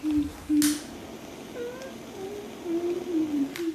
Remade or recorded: recorded